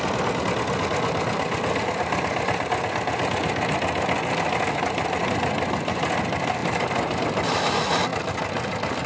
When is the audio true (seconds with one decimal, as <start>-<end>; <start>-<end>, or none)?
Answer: 0.0-6.6; 7.2-9.1